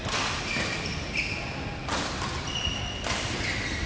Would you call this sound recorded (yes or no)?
yes